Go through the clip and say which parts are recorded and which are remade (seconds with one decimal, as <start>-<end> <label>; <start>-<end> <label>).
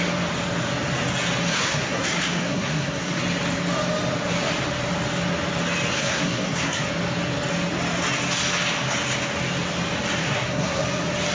0.0-1.5 recorded; 1.5-3.2 remade; 3.2-6.0 recorded; 6.0-6.9 remade; 6.9-10.2 recorded; 10.2-10.8 remade; 10.8-11.3 recorded